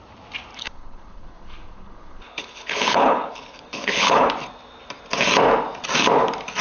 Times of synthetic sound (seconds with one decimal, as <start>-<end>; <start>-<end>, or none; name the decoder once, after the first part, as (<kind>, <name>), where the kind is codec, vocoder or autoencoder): 0.5-4.3 (codec, HILCodec)